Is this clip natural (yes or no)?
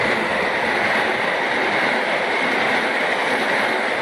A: yes